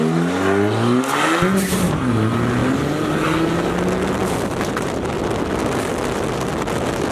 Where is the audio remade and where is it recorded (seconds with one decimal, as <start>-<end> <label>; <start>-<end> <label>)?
0.0-7.1 recorded